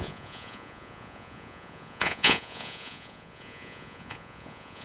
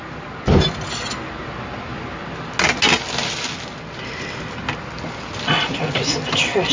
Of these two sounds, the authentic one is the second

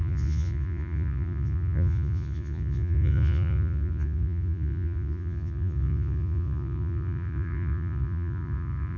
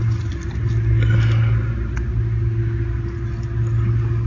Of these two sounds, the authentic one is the second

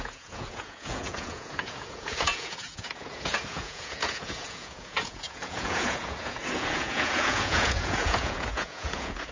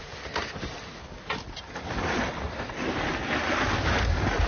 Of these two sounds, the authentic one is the second